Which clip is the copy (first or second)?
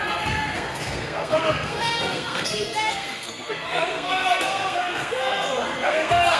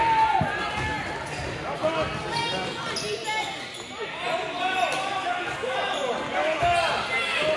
first